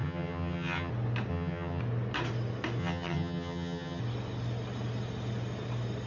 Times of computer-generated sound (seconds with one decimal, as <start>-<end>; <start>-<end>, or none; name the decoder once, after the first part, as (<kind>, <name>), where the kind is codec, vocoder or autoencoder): 0.0-0.9 (vocoder, HiFi-GAN); 1.3-1.8; 2.8-4.0